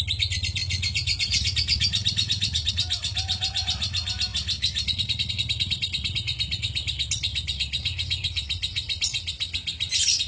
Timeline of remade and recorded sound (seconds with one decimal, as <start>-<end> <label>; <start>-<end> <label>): 0.0-10.3 recorded